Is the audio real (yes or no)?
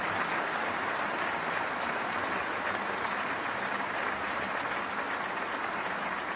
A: yes